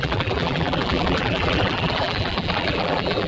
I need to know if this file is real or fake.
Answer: fake